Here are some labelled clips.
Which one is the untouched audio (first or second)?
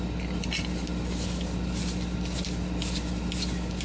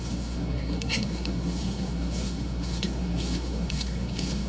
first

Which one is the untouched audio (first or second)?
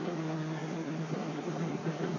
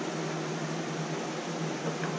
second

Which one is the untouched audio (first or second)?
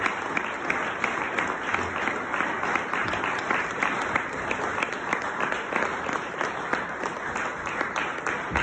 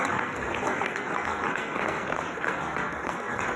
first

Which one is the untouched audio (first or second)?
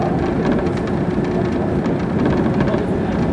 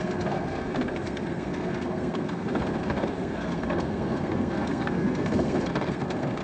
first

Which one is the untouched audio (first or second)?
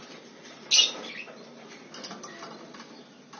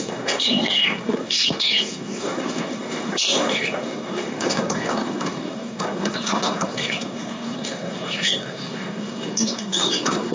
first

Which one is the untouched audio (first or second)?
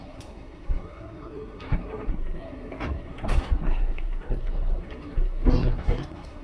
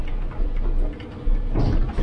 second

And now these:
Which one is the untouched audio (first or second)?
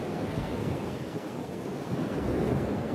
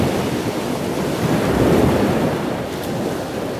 second